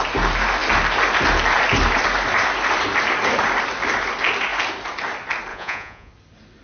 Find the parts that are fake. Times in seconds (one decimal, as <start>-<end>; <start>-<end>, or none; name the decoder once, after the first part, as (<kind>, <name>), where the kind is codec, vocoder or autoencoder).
5.5-6.1 (vocoder, Vocos)